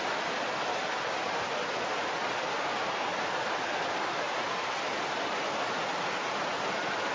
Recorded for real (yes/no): yes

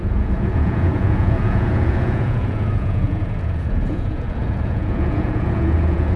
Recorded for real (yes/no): no